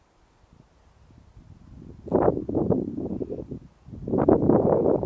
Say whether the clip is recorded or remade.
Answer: recorded